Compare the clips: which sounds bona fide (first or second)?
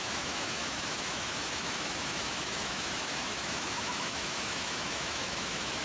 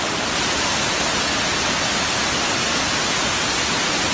second